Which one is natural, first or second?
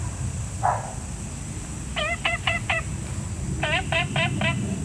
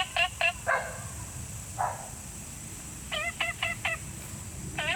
first